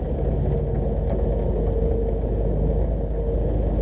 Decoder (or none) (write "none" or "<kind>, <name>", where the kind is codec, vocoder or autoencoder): none